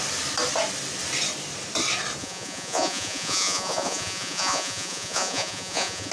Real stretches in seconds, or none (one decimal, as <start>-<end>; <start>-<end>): 0.0-2.2

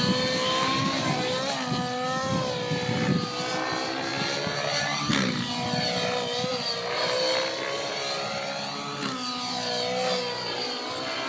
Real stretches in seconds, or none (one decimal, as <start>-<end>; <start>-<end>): 0.0-11.3

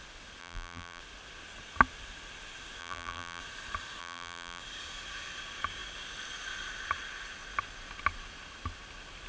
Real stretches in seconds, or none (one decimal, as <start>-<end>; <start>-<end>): 0.0-0.4; 1.0-2.8; 3.4-4.0; 4.6-9.3